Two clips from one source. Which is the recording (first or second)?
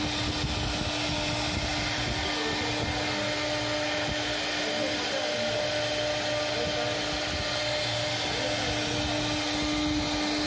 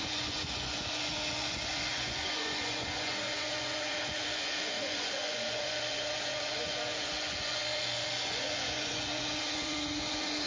first